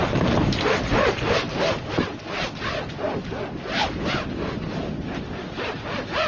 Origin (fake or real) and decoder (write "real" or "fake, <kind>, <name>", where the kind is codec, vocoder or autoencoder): real